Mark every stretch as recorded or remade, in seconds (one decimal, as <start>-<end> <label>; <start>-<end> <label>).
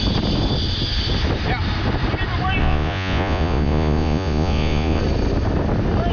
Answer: 0.0-2.6 recorded; 2.6-5.0 remade; 5.0-6.1 recorded